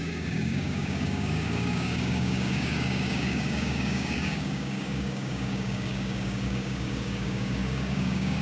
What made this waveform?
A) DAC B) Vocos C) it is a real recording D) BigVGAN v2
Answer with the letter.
A